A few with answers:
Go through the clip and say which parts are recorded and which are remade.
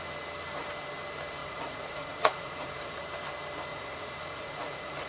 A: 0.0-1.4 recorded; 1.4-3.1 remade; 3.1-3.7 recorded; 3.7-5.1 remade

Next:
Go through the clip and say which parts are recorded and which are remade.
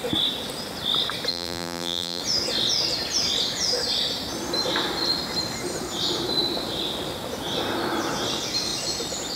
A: 0.0-1.3 recorded; 1.3-2.2 remade; 2.2-9.4 recorded